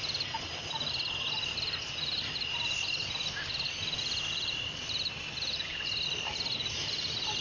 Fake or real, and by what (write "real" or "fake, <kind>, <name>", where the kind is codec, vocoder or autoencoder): real